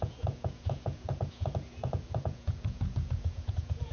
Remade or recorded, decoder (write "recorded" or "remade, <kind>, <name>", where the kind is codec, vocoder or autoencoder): remade, vocoder, Vocos